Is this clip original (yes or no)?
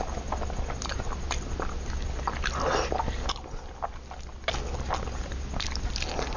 yes